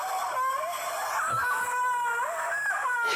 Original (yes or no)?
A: yes